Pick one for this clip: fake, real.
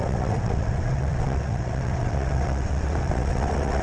fake